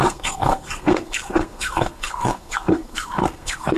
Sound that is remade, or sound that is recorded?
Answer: remade